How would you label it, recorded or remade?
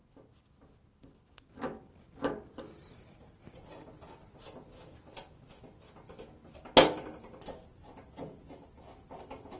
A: recorded